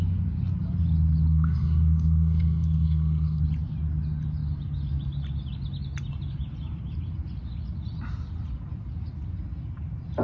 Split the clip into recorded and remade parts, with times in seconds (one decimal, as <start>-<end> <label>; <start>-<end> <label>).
0.0-1.3 recorded; 1.3-3.4 remade; 3.4-10.2 recorded